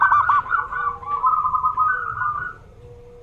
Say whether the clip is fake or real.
real